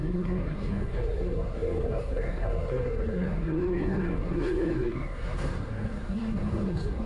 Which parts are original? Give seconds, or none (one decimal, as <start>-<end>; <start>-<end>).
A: none